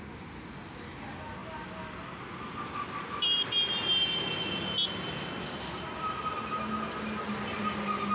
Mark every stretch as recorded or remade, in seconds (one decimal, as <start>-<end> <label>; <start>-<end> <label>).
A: 0.0-8.1 recorded